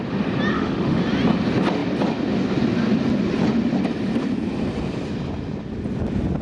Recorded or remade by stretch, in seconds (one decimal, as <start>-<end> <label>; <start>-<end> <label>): 0.0-0.5 recorded; 0.5-1.0 remade; 1.0-6.4 recorded

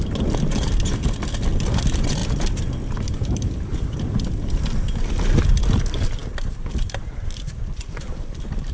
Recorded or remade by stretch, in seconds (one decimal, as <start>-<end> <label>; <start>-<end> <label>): 0.0-2.2 recorded; 2.2-5.8 remade; 5.8-6.2 recorded; 6.2-8.7 remade